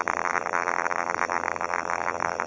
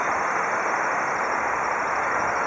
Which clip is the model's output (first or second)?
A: first